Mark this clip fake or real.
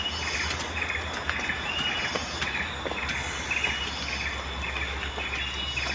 real